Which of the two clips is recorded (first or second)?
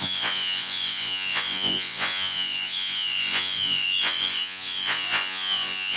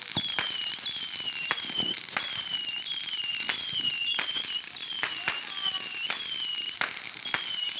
second